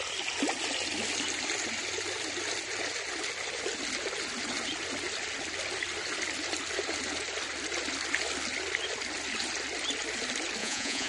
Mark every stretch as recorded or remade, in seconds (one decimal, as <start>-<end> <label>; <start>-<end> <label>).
0.0-10.6 recorded; 10.6-11.1 remade

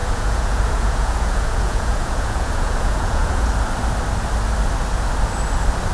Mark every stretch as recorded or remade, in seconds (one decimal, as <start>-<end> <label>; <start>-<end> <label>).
0.0-3.5 remade; 3.5-5.9 recorded

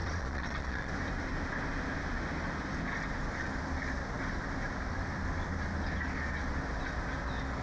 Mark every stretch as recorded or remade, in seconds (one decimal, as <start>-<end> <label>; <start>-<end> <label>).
0.0-0.9 remade; 0.9-7.6 recorded

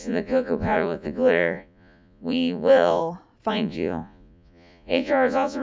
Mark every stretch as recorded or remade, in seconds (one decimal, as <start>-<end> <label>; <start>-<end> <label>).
0.0-3.0 remade; 3.0-3.5 recorded; 3.5-5.6 remade

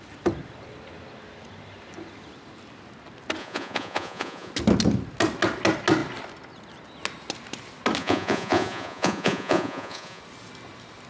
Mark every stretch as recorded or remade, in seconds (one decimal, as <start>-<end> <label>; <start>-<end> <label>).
0.0-3.4 recorded; 3.4-4.5 remade; 4.5-8.0 recorded; 8.0-10.2 remade; 10.2-11.1 recorded